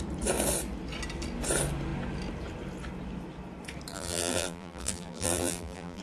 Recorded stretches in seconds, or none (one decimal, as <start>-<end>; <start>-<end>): 0.0-3.9